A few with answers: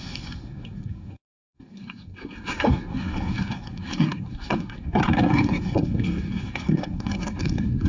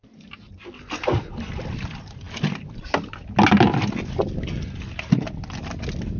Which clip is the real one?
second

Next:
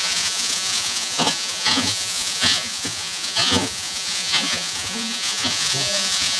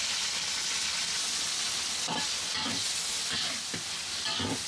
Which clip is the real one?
second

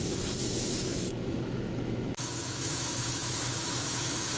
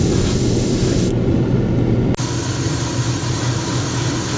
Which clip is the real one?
second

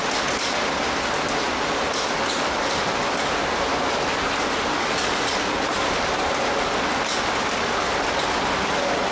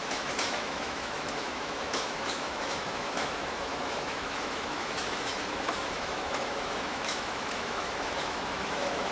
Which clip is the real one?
first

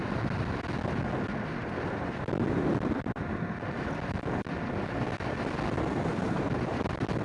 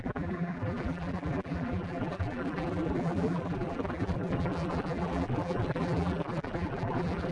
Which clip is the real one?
first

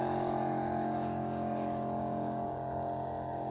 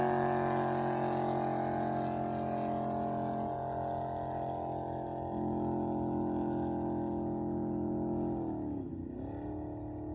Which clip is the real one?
second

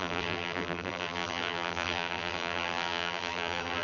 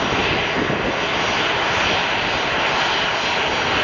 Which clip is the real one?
second